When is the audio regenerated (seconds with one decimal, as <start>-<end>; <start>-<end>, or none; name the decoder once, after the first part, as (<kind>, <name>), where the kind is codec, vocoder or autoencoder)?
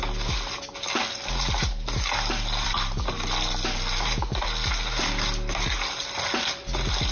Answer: none